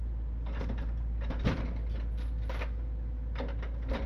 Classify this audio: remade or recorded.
recorded